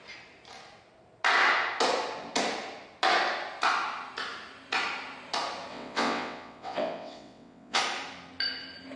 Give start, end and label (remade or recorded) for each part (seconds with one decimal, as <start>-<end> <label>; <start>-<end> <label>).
0.0-5.7 recorded; 5.7-7.8 remade; 7.8-9.0 recorded